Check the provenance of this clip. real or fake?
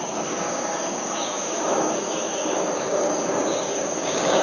fake